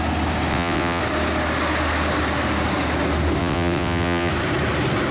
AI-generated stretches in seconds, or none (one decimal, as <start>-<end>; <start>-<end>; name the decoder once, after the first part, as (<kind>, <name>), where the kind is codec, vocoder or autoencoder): 0.5-1.0 (vocoder, WaveNeXt); 3.4-4.3